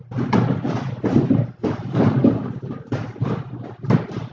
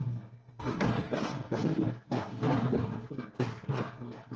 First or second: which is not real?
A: second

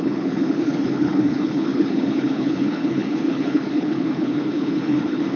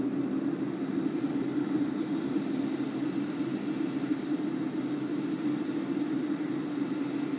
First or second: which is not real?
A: first